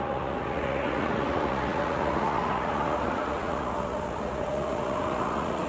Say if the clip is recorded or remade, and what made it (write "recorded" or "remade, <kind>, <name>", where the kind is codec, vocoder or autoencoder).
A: remade, vocoder, Vocos